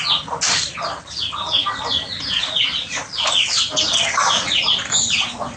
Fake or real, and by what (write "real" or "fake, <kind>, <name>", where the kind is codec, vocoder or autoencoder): real